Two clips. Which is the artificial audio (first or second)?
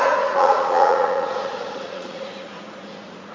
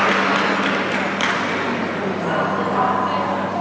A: first